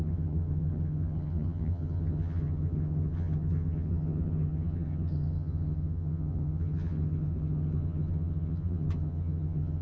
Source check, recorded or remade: remade